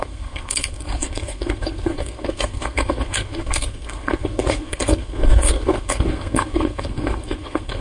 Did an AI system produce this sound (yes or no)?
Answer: yes